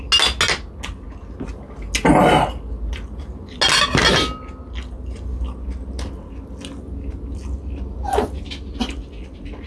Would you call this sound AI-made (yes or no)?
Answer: no